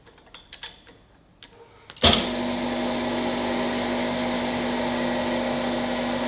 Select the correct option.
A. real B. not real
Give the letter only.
A